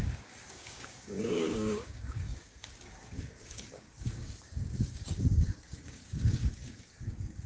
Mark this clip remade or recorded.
remade